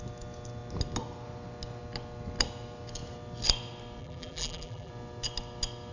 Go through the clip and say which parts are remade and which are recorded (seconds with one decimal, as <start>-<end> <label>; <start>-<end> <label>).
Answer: 0.0-4.0 recorded; 4.0-4.9 remade; 4.9-5.9 recorded